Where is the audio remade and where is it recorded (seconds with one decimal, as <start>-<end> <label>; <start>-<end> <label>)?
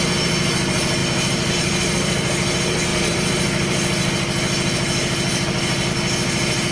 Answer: 0.0-6.7 recorded